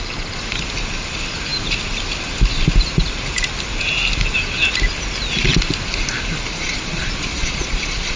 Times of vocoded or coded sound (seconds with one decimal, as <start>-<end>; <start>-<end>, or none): 6.5-8.2